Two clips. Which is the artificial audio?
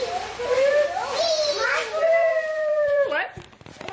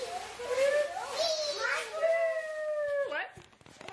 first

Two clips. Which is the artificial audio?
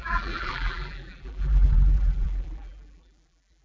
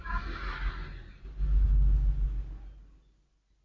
first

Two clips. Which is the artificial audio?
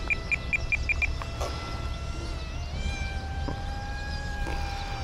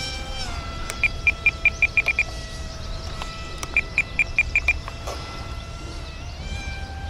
second